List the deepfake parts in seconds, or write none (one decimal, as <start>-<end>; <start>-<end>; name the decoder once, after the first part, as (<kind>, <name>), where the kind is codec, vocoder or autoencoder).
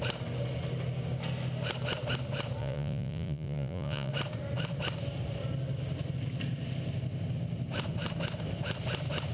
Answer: 2.6-4.1 (vocoder, Vocos)